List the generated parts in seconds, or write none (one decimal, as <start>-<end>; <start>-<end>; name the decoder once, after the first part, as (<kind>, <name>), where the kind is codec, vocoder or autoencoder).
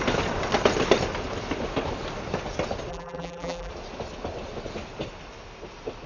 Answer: 2.9-3.7 (vocoder, BigVGAN v2)